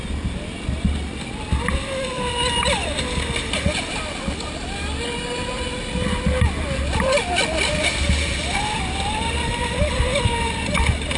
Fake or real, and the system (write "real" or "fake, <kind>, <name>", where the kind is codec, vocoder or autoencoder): real